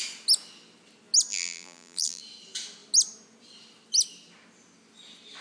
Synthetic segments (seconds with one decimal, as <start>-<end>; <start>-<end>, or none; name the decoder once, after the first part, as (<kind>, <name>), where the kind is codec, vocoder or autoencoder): 1.3-2.2 (vocoder, BigVGAN v2)